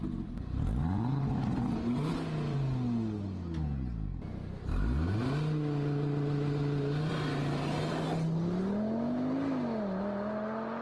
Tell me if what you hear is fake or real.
real